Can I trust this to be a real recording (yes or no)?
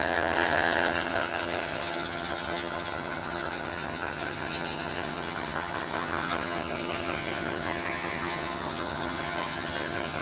no